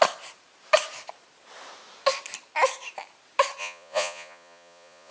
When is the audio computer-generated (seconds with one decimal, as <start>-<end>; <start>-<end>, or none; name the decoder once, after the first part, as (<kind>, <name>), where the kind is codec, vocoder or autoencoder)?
3.6-5.1 (vocoder, Vocos)